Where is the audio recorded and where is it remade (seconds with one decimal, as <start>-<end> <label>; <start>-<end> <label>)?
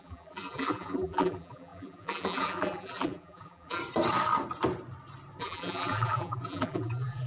0.0-3.8 remade; 3.8-5.4 recorded; 5.4-7.3 remade